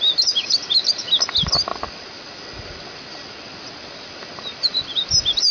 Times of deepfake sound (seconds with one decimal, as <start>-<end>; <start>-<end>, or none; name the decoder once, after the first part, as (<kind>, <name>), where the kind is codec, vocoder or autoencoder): 0.4-1.1 (vocoder, BigVGAN v2); 1.7-5.0